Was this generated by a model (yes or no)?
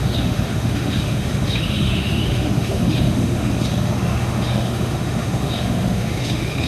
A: yes